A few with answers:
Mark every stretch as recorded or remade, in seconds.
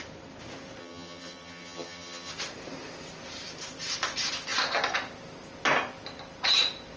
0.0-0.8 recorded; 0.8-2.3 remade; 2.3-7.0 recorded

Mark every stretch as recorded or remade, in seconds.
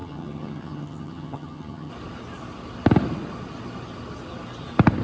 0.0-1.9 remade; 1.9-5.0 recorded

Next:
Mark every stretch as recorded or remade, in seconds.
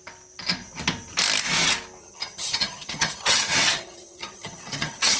0.0-2.0 recorded; 2.0-5.2 remade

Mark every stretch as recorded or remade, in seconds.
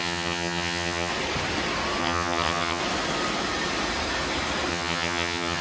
0.0-1.1 remade; 1.1-2.0 recorded; 2.0-2.8 remade; 2.8-4.7 recorded; 4.7-5.6 remade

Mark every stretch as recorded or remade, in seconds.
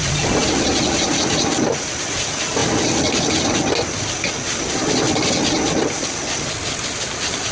0.0-7.5 recorded